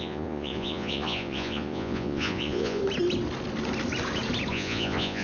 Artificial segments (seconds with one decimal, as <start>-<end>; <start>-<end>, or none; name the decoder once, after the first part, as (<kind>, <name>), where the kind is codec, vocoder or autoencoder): 0.0-2.8 (vocoder, Vocos); 4.5-5.2